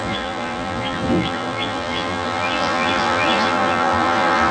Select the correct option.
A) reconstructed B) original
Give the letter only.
A